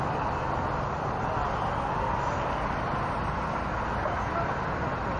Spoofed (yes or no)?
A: no